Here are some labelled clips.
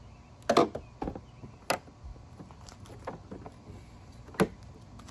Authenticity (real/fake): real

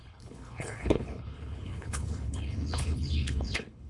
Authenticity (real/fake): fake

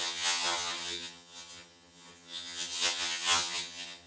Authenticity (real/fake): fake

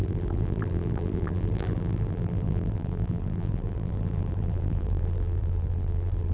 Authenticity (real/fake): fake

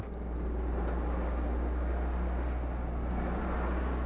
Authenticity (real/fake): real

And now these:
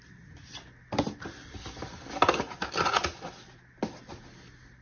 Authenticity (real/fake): real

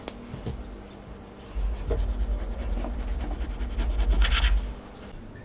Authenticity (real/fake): real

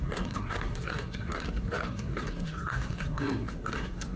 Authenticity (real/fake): fake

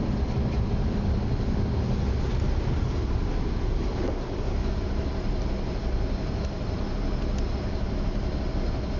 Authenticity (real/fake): real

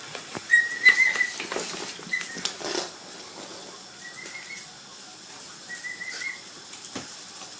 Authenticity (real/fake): real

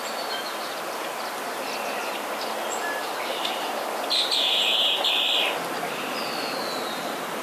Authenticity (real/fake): real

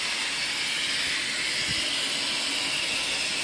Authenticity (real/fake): real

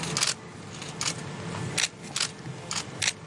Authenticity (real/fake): real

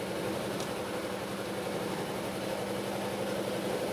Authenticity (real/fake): real